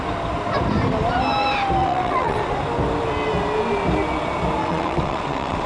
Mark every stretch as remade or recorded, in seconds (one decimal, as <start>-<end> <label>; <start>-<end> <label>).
0.0-1.8 recorded; 1.8-2.4 remade; 2.4-4.6 recorded; 4.6-5.7 remade